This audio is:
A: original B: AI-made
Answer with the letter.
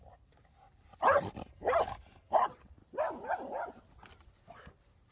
A